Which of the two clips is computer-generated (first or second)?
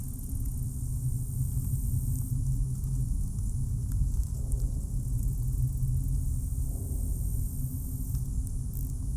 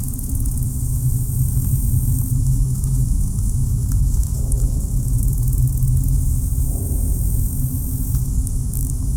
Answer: second